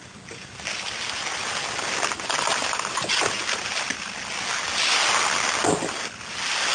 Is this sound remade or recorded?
recorded